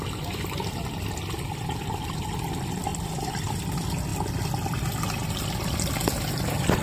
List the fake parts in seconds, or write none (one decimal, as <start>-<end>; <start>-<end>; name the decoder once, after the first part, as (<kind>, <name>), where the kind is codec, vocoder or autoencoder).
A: none